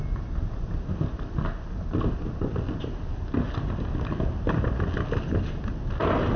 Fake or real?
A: real